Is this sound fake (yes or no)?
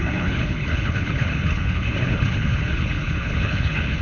yes